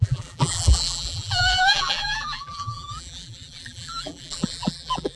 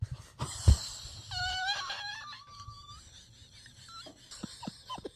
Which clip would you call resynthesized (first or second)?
first